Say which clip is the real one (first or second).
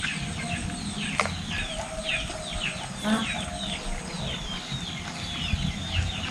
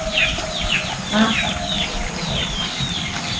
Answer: first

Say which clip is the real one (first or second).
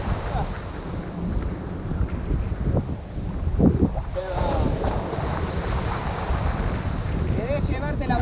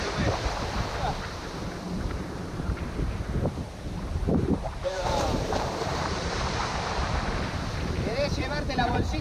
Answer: first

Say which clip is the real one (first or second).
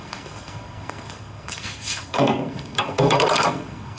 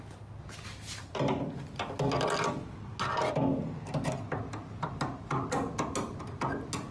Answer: second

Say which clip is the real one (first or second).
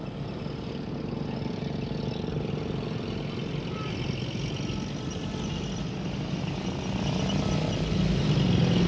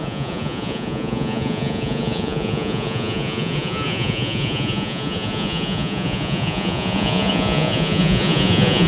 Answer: first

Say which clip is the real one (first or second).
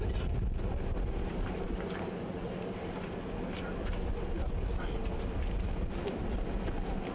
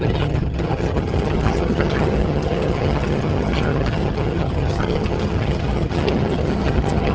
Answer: first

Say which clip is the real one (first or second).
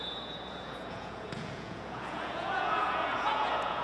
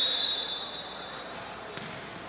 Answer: second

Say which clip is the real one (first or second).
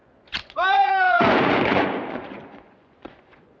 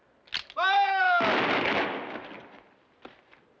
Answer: second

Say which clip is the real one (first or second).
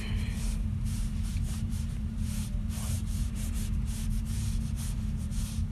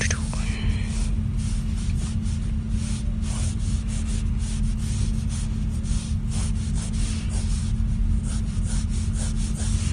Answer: second